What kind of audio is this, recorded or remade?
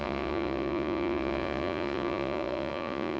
remade